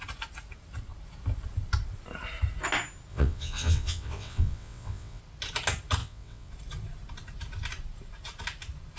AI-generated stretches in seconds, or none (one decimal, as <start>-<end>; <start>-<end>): 3.1-5.2; 6.0-6.5